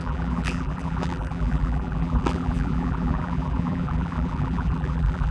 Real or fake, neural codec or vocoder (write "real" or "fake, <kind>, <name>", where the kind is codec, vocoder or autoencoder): fake, vocoder, BigVGAN v2